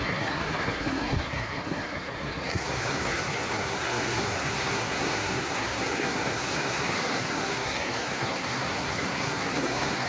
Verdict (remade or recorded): remade